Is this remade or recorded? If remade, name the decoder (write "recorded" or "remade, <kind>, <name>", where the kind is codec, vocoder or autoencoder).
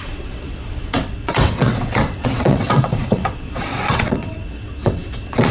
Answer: remade, vocoder, WaveNeXt